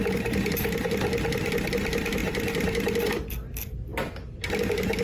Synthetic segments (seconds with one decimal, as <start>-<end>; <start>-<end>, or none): 0.0-3.9; 4.5-5.0